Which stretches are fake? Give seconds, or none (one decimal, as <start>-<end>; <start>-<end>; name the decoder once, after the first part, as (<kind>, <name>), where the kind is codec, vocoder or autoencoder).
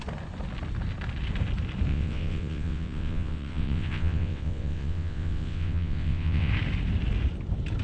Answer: 1.9-6.5 (vocoder, WaveNeXt)